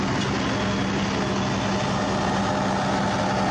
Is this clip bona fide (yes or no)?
yes